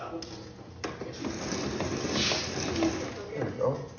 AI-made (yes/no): no